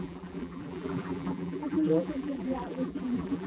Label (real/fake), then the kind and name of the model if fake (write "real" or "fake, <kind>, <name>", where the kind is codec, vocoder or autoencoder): fake, vocoder, BigVGAN v2